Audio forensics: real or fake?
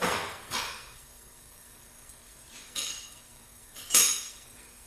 fake